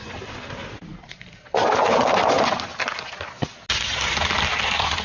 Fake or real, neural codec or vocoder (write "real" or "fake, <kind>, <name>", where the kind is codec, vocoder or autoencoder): real